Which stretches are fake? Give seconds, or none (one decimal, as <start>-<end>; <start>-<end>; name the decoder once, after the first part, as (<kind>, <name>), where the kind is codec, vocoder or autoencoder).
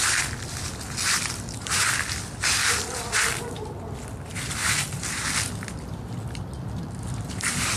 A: none